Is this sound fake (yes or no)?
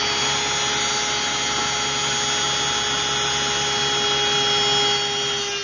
no